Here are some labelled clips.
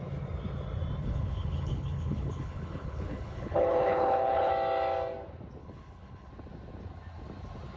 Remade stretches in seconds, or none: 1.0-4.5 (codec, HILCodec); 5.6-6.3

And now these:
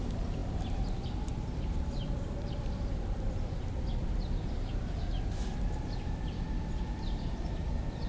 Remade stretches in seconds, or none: 0.4-0.9 (vocoder, BigVGAN v2); 1.3-5.0